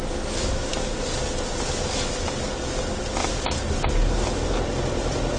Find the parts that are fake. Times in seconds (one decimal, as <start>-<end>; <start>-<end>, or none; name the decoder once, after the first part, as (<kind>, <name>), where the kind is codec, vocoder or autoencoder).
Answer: none